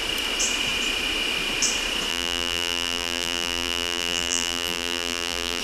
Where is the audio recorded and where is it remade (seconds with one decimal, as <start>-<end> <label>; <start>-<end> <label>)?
0.0-2.1 recorded; 2.1-5.6 remade